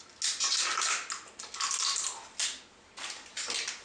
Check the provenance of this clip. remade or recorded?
recorded